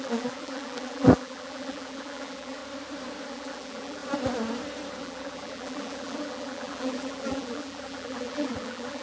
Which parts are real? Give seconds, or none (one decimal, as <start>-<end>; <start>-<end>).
2.6-3.3; 4.0-5.0